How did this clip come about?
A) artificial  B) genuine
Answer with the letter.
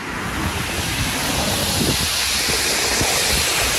B